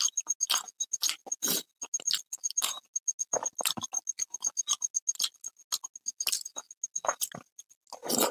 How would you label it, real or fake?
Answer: real